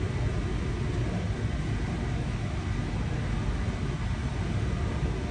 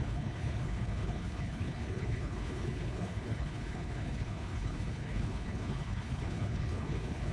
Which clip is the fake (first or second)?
second